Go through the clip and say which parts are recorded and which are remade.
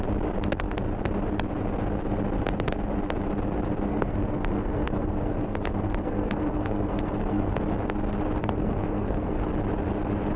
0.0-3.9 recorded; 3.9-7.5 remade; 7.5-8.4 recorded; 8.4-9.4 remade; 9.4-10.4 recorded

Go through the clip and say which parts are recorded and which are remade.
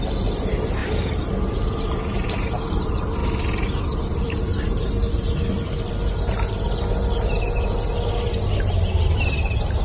0.0-0.8 recorded; 0.8-1.5 remade; 1.5-3.2 recorded; 3.2-4.9 remade; 4.9-9.8 recorded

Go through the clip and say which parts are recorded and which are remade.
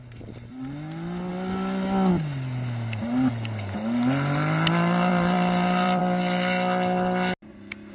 0.0-5.1 recorded; 5.1-6.0 remade; 6.0-7.9 recorded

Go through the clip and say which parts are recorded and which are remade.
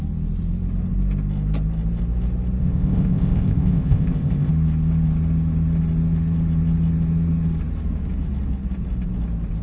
0.0-2.6 recorded; 2.6-4.5 remade; 4.5-9.6 recorded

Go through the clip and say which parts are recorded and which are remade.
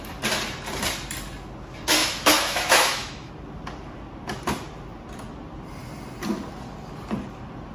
0.0-2.0 recorded; 2.0-3.3 remade; 3.3-7.7 recorded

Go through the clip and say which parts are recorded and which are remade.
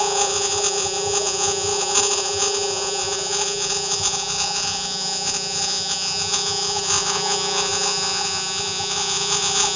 0.0-9.8 remade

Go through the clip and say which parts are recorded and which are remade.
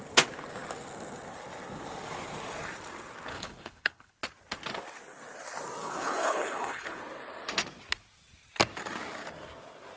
0.0-3.3 recorded; 3.3-4.1 remade; 4.1-5.8 recorded; 5.8-7.0 remade; 7.0-10.0 recorded